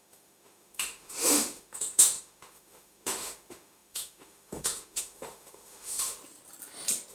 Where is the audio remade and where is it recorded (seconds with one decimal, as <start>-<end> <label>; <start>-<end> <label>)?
0.0-6.2 remade; 6.2-7.1 recorded